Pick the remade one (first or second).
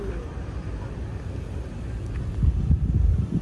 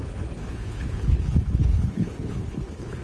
second